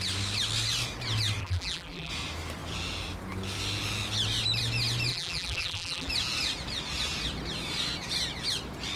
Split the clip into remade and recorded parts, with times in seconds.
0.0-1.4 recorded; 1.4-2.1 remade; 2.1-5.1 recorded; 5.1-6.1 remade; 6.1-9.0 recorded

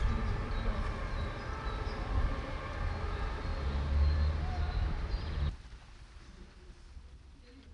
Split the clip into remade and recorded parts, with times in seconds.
0.0-7.7 recorded

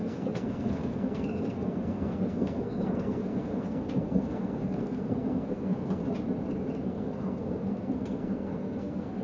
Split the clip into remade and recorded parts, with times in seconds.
0.0-6.0 remade; 6.0-6.7 recorded; 6.7-9.2 remade

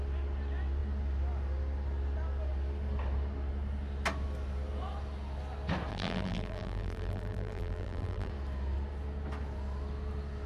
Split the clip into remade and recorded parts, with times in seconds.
0.0-5.9 recorded; 5.9-8.3 remade; 8.3-10.5 recorded